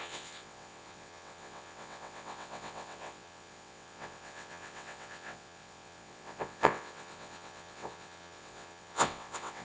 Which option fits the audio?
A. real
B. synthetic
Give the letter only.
B